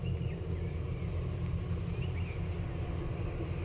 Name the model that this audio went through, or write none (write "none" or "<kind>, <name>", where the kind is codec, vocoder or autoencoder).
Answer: none